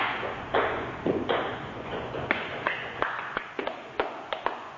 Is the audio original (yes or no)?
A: no